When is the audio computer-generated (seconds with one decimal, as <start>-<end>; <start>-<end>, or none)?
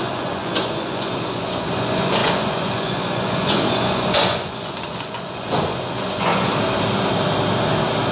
0.0-6.5